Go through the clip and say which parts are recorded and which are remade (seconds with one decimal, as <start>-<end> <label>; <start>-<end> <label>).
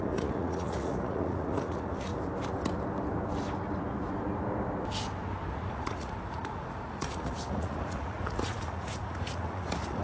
0.0-2.1 remade; 2.1-5.5 recorded; 5.5-10.0 remade